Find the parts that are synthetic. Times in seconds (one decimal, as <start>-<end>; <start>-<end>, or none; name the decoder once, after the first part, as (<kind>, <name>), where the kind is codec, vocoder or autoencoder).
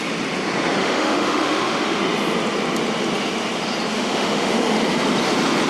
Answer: 0.8-2.0 (autoencoder, DAC-VAE); 3.9-4.8